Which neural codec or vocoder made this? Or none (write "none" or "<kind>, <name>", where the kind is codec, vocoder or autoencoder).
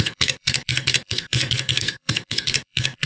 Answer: codec, SNAC